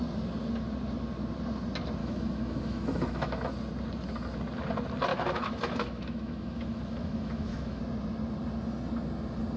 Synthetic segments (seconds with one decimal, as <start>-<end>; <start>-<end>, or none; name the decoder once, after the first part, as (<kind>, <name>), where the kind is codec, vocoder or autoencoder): 2.0-3.5 (autoencoder, DAC-VAE); 5.1-7.8